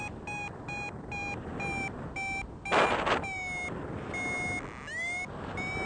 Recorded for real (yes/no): yes